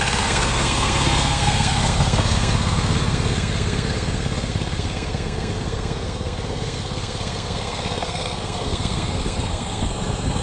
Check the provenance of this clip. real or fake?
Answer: fake